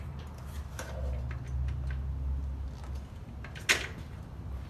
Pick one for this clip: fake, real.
real